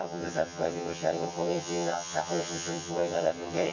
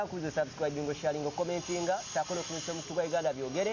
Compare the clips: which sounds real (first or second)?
second